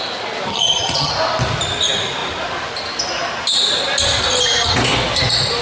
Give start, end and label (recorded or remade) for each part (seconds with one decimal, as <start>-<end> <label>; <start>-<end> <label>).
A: 0.0-0.5 recorded; 0.5-1.1 remade; 1.1-5.6 recorded

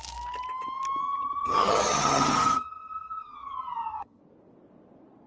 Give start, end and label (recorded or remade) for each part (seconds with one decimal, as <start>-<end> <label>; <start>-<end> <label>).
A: 0.0-1.0 recorded; 1.0-4.2 remade; 4.2-5.3 recorded

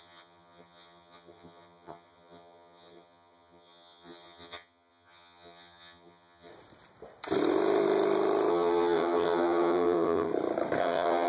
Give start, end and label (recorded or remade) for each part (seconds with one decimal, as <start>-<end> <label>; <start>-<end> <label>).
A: 0.0-6.5 remade; 6.5-8.5 recorded; 8.5-10.3 remade; 10.3-10.8 recorded; 10.8-11.3 remade

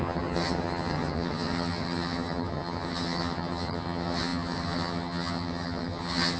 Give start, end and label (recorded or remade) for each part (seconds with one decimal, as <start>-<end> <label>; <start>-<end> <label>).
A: 0.0-6.4 remade

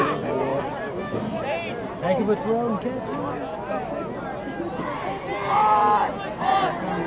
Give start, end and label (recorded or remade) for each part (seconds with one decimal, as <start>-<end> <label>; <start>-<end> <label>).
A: 0.0-7.1 recorded

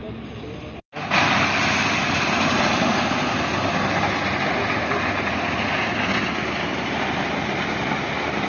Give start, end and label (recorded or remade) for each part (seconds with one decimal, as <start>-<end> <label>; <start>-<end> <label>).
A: 0.0-8.5 recorded